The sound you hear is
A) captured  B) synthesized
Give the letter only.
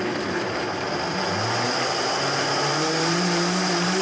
A